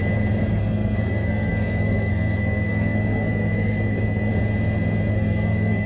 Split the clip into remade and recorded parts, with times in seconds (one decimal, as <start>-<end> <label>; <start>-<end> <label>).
0.0-0.6 recorded; 0.6-4.3 remade; 4.3-5.1 recorded; 5.1-5.9 remade